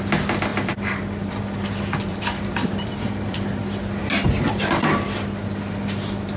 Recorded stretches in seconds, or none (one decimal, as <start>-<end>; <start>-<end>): 0.0-0.5; 1.3-2.1; 3.6-6.4